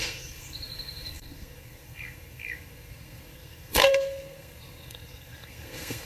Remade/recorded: remade